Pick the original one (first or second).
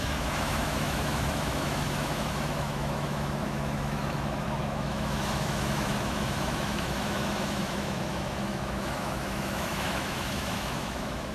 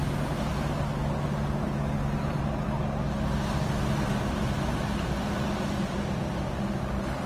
second